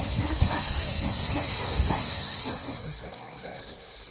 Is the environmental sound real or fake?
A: fake